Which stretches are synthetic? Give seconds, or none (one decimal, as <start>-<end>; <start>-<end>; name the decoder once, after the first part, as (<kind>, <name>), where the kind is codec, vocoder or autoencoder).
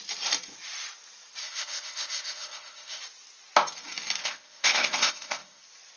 1.4-3.0 (codec, ZipCodec); 4.2-5.6